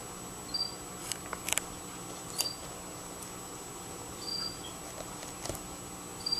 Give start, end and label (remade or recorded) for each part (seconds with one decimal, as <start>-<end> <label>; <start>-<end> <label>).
0.0-6.4 recorded